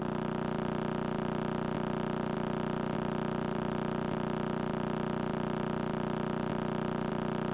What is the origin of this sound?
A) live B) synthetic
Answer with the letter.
A